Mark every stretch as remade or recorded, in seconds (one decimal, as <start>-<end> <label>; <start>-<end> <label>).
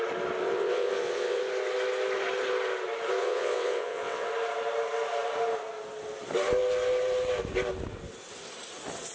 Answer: 0.0-0.4 recorded; 0.4-1.4 remade; 1.4-3.2 recorded; 3.2-4.3 remade; 4.3-9.1 recorded